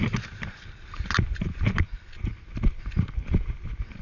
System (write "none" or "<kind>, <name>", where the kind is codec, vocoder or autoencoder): none